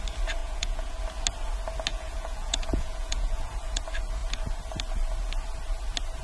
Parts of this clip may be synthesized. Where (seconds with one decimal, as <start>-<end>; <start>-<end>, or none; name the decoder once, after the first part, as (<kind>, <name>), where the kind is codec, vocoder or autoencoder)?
0.4-1.0 (vocoder, Vocos); 1.9-3.8